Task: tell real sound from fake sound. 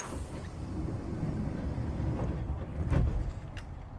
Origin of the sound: real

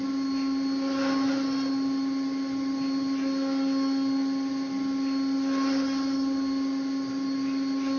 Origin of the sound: real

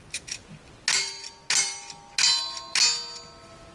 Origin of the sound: real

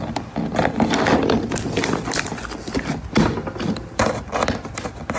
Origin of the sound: real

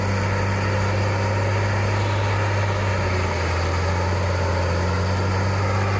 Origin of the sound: real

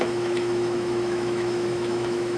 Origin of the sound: fake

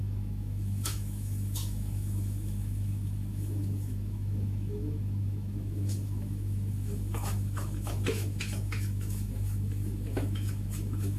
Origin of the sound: fake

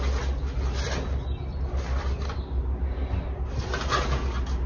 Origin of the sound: real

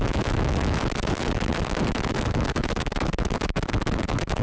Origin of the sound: fake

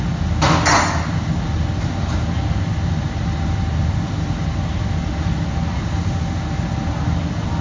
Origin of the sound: real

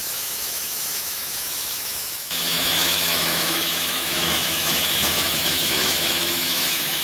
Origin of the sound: fake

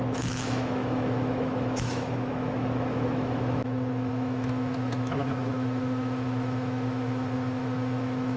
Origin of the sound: fake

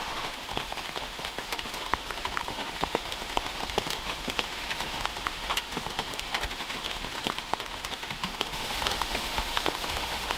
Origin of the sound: fake